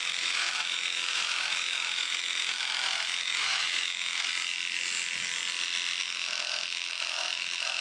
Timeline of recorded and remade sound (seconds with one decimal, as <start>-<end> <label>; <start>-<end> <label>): 0.0-4.3 remade; 4.3-6.0 recorded; 6.0-7.8 remade